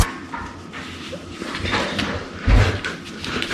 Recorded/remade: remade